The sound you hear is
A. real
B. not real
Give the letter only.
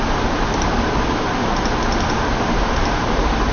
A